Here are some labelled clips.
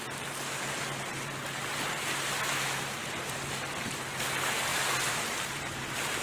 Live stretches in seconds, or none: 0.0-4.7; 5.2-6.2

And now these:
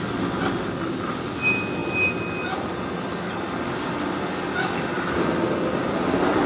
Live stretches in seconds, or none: 0.0-6.5

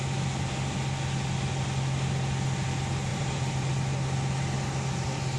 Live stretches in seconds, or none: 0.0-3.1; 3.7-5.4

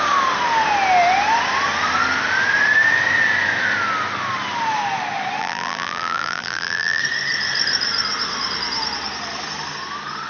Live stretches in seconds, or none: 0.0-5.4; 7.0-10.3